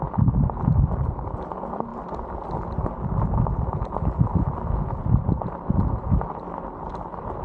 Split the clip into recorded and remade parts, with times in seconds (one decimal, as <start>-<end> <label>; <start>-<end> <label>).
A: 0.0-7.4 recorded